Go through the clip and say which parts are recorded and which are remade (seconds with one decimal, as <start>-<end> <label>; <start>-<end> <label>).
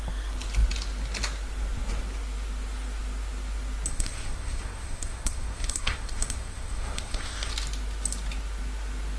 0.0-3.9 recorded; 3.9-7.5 remade; 7.5-9.2 recorded